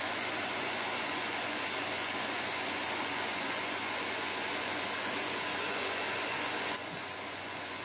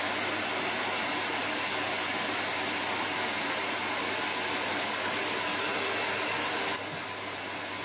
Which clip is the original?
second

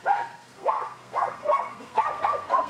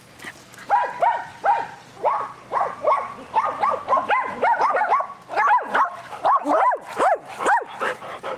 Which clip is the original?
second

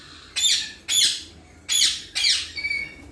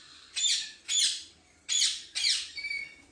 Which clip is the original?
first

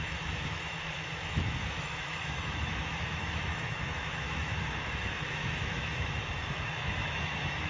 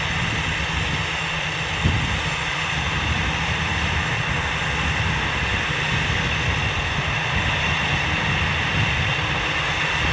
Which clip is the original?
second